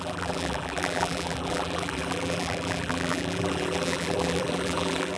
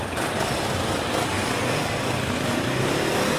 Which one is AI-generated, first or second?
first